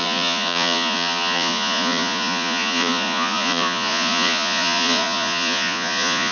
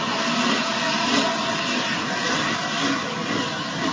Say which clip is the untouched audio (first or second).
second